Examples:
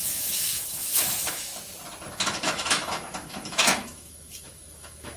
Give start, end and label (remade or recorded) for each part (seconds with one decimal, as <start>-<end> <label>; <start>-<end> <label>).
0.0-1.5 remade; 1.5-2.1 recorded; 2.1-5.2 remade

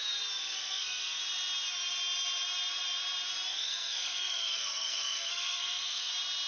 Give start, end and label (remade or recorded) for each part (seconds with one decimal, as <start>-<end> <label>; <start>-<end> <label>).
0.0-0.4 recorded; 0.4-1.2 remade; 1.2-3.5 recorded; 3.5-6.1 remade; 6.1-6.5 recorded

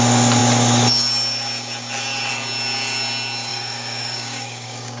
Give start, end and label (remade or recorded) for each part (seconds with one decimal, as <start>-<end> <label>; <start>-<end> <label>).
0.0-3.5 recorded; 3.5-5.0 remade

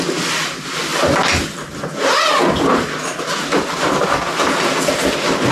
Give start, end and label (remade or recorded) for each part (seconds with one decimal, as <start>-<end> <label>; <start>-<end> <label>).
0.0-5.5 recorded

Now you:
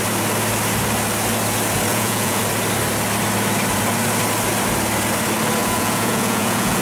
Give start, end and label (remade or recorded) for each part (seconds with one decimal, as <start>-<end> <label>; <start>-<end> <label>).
0.0-1.9 recorded; 1.9-2.4 remade; 2.4-5.6 recorded; 5.6-6.8 remade

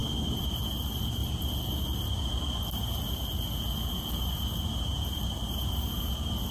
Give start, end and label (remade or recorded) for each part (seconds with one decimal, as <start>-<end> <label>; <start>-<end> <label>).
0.0-1.2 remade; 1.2-4.2 recorded; 4.2-6.5 remade